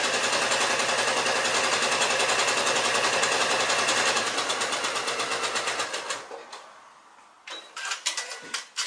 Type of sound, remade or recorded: recorded